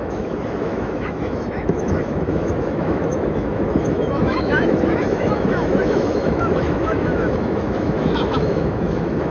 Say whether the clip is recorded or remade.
remade